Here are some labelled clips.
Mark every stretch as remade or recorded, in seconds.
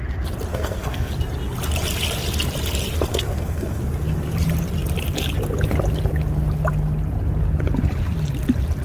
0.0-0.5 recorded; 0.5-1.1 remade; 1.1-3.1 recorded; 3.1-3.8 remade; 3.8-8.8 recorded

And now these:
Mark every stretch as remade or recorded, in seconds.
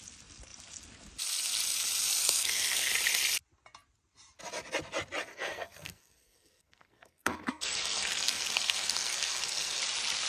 0.0-2.2 recorded; 2.2-2.9 remade; 2.9-5.3 recorded; 5.3-9.8 remade; 9.8-10.3 recorded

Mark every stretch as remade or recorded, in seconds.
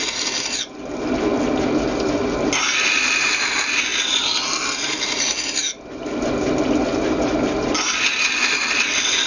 0.0-9.3 recorded